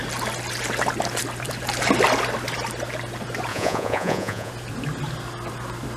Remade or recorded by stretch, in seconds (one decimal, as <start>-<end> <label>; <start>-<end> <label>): 0.0-3.5 recorded; 3.5-4.5 remade; 4.5-6.0 recorded